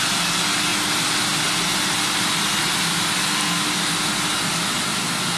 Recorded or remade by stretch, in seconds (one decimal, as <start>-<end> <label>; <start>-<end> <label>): 0.0-5.4 recorded